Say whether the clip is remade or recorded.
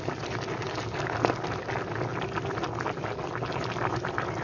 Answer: recorded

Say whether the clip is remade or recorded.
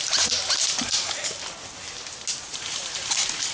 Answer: recorded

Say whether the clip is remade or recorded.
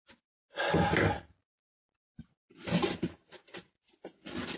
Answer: recorded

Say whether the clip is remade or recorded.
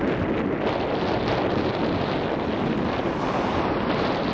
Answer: recorded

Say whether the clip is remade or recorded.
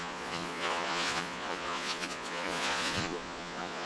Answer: remade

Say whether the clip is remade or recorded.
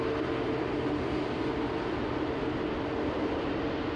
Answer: recorded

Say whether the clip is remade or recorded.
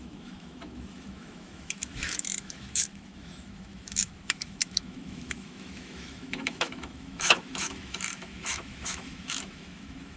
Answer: remade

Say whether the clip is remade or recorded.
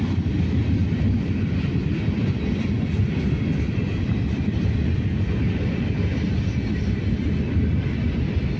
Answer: recorded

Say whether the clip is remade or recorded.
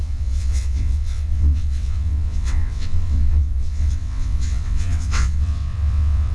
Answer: remade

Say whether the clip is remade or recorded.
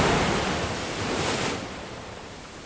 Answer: recorded